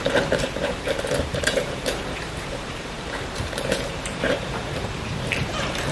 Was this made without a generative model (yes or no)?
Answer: no